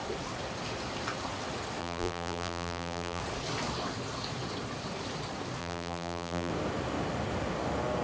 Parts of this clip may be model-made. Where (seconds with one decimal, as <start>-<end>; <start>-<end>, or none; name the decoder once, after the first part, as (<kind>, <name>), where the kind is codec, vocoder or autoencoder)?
1.8-3.2 (vocoder, BigVGAN v2); 5.6-6.5